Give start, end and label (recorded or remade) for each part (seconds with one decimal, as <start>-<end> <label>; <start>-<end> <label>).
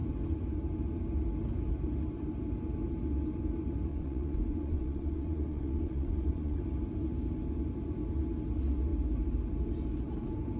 0.0-3.9 recorded; 3.9-6.6 remade; 6.6-10.6 recorded